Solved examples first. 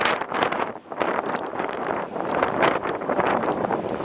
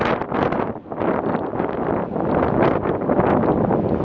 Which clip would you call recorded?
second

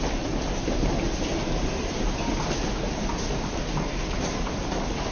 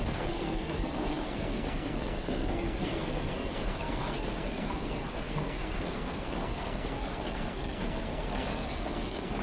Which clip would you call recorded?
first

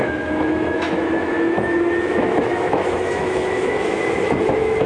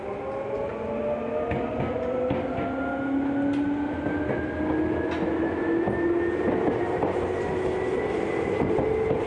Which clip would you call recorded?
second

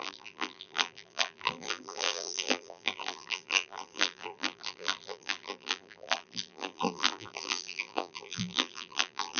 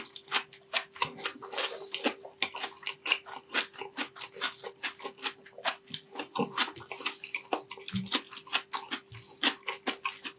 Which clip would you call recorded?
second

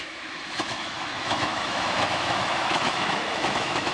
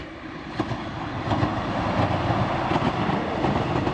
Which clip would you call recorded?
second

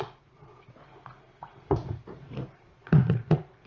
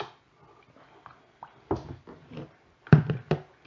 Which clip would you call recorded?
second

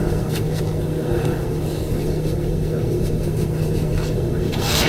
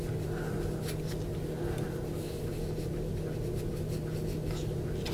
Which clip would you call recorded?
second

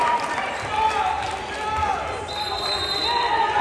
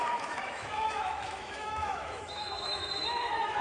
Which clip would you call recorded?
first